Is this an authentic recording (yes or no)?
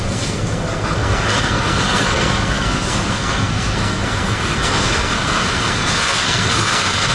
no